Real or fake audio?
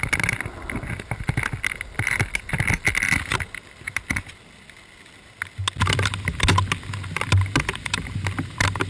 real